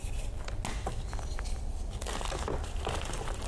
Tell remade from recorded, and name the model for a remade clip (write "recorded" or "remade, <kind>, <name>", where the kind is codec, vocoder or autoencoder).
recorded